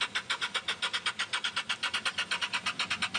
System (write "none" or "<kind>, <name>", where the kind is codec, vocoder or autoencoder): none